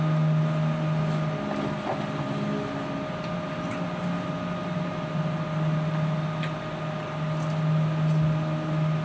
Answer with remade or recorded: recorded